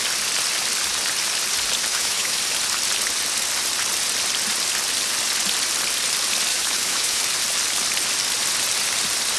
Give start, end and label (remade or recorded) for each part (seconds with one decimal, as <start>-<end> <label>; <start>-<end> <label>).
0.0-1.9 recorded; 1.9-2.4 remade; 2.4-6.5 recorded; 6.5-7.2 remade; 7.2-9.4 recorded